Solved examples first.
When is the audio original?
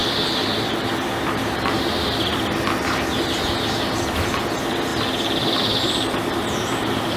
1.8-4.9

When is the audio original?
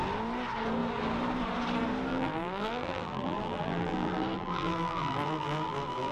0.0-2.1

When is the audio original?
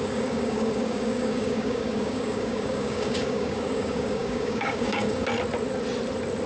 5.3-6.5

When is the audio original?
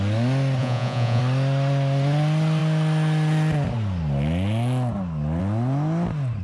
0.0-0.6; 1.2-6.4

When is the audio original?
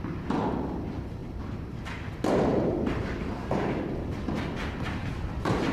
0.0-1.2; 2.1-2.5; 3.9-5.7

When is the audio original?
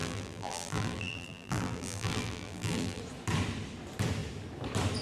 3.0-5.0